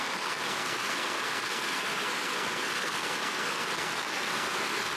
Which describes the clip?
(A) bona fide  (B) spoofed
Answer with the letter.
B